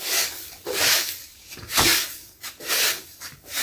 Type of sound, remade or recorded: remade